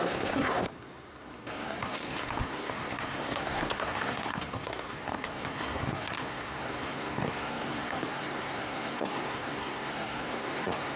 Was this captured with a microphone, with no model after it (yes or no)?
no